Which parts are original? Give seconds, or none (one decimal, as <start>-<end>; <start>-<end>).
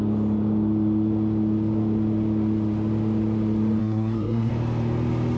0.0-3.8; 4.5-5.4